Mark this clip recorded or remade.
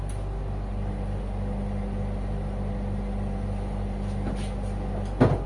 recorded